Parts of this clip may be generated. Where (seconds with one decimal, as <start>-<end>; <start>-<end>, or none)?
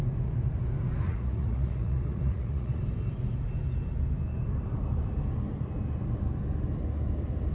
1.1-2.8